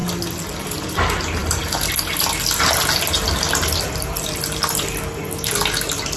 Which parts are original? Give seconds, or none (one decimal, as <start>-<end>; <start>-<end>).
0.0-6.2